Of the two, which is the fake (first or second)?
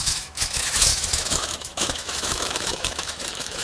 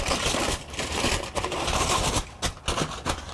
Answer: first